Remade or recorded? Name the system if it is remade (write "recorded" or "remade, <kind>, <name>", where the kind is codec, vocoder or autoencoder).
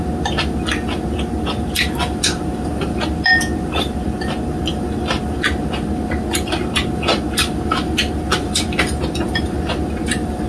recorded